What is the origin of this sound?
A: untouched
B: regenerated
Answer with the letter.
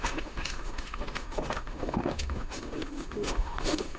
B